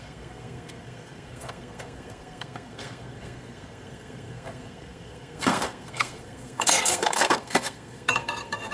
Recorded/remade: remade